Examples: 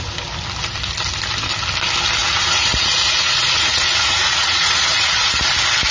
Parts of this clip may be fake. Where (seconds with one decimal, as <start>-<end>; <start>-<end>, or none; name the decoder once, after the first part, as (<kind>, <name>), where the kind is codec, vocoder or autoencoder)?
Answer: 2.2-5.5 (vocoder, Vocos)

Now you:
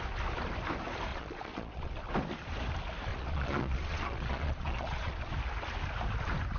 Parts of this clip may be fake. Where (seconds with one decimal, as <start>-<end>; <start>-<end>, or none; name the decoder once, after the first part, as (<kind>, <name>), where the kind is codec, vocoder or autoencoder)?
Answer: 1.1-1.9 (vocoder, Vocos); 3.1-5.1

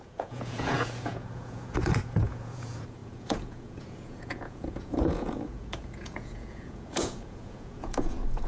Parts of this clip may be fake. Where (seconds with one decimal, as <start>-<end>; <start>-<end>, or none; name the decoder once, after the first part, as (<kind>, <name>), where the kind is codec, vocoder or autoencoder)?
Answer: 0.0-8.5 (vocoder, Vocos)

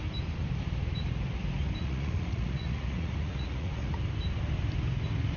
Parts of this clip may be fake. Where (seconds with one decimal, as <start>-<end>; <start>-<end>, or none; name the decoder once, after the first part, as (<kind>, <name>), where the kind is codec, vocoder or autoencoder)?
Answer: 1.8-3.9 (vocoder, Vocos)

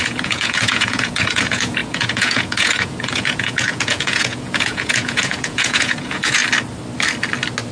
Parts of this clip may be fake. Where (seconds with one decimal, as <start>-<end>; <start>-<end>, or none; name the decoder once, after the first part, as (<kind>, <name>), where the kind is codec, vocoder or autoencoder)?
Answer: 0.0-6.4 (vocoder, Vocos)

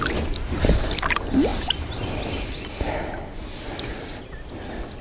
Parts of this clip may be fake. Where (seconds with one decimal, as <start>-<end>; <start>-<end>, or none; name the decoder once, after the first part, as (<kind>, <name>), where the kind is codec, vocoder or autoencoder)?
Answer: none

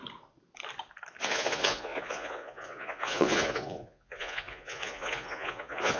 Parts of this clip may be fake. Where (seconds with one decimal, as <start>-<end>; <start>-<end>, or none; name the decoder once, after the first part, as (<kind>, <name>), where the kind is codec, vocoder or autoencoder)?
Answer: 1.2-6.0 (vocoder, Vocos)